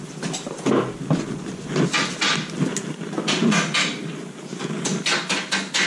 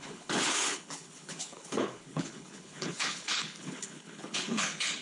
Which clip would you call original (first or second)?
first